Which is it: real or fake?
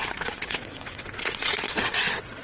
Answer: fake